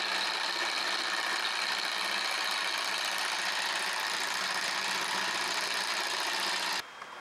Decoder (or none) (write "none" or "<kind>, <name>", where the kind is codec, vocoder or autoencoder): none